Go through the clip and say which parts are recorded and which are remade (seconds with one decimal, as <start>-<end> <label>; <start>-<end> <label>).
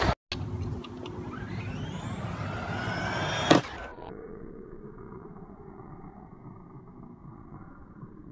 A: 0.0-3.9 recorded; 3.9-6.4 remade; 6.4-7.2 recorded; 7.2-8.3 remade